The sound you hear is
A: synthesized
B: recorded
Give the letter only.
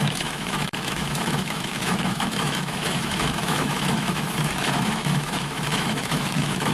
A